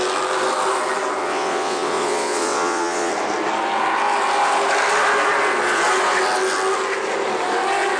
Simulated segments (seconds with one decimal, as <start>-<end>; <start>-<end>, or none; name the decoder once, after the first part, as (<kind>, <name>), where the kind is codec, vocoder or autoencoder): 1.2-3.1 (vocoder, WaveNeXt)